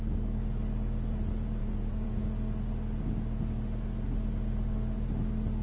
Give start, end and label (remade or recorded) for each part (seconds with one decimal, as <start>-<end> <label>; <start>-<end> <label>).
0.0-1.6 recorded; 1.6-2.2 remade; 2.2-5.6 recorded